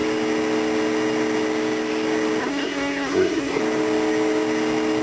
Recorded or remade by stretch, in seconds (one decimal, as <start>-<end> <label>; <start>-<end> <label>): 0.0-2.4 recorded; 2.4-3.6 remade; 3.6-5.0 recorded